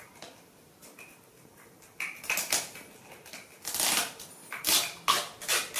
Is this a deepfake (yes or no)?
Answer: no